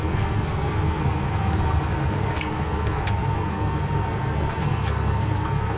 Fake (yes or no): yes